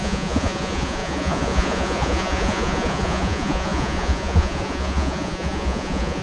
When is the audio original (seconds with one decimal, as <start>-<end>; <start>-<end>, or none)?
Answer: none